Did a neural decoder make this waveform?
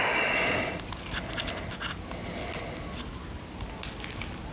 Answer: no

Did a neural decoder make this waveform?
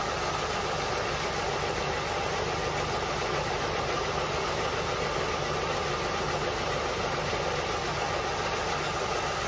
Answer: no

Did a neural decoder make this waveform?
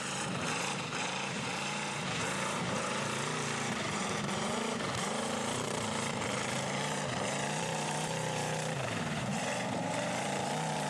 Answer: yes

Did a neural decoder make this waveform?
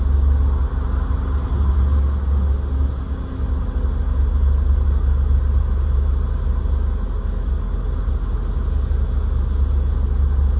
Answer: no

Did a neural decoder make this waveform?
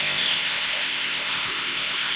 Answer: yes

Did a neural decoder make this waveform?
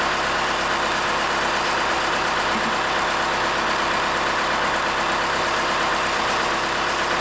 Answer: no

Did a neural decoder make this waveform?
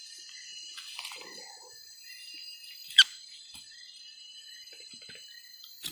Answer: yes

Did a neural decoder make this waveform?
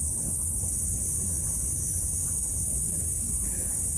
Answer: yes